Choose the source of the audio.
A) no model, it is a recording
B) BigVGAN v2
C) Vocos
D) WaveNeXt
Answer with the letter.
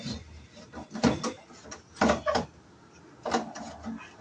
A